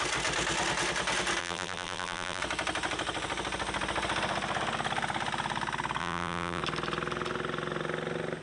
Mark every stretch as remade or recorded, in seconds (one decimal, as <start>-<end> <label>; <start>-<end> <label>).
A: 0.0-1.4 recorded; 1.4-2.4 remade; 2.4-6.0 recorded; 6.0-6.6 remade; 6.6-8.4 recorded